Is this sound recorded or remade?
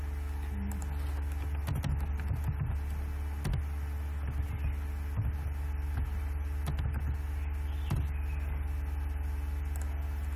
recorded